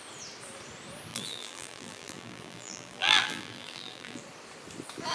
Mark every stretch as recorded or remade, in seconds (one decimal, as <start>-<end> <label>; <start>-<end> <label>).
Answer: 0.0-1.1 recorded; 1.1-4.2 remade; 4.2-5.1 recorded